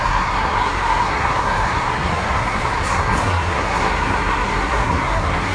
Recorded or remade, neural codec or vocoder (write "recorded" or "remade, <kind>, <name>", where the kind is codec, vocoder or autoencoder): remade, codec, SNAC